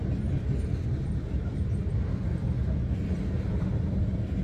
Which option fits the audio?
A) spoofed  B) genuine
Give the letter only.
B